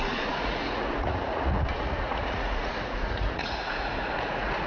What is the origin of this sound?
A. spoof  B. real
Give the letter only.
A